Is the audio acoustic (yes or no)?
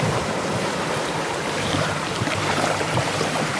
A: no